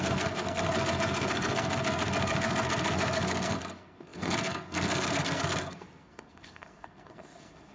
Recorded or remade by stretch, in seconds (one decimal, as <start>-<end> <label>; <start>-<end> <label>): 0.0-7.7 remade